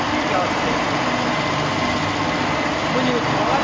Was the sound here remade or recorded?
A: recorded